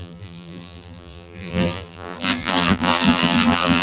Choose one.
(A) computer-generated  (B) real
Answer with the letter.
A